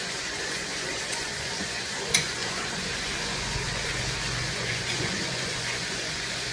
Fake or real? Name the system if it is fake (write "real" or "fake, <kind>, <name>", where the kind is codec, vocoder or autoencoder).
fake, vocoder, Vocos